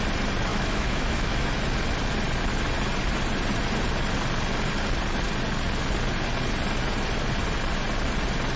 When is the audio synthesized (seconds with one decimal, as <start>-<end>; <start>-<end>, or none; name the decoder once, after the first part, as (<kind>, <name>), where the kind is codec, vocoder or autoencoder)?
0.5-1.6 (autoencoder, DAC-VAE)